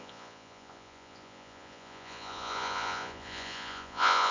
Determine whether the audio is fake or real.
fake